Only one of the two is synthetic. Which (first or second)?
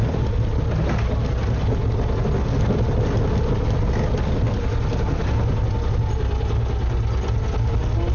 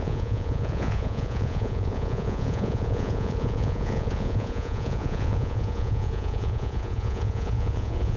second